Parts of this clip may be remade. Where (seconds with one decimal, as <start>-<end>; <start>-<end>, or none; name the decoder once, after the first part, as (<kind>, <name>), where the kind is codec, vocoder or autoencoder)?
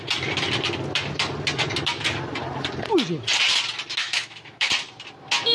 4.0-4.7 (autoencoder, DAC-VAE)